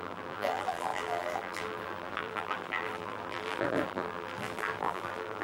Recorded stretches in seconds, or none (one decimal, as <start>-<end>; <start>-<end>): none